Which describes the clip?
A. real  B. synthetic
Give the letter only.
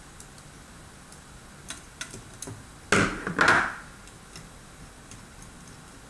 A